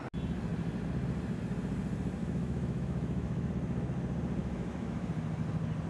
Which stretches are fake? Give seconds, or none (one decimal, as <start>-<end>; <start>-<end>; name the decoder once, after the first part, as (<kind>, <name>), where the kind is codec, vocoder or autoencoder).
2.2-3.5 (autoencoder, DAC-VAE); 4.4-5.1